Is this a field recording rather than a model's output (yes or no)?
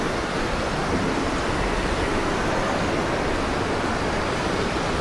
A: yes